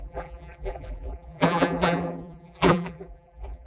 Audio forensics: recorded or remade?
remade